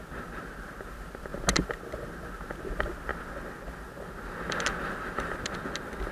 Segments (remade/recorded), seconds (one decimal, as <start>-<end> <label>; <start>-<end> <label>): 0.0-4.7 recorded; 4.7-5.4 remade; 5.4-6.1 recorded